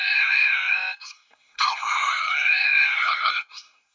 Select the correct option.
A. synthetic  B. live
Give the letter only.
A